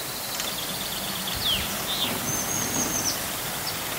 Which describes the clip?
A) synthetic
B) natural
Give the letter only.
B